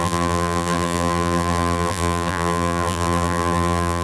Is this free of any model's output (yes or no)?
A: no